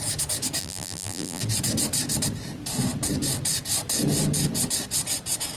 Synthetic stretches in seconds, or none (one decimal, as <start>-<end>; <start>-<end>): 0.6-1.4